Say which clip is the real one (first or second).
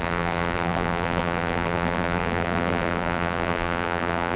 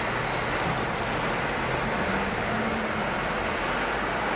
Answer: second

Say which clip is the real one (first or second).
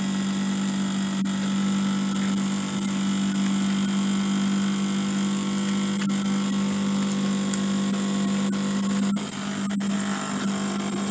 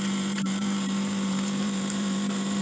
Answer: first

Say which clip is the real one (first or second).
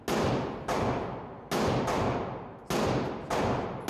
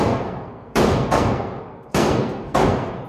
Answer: first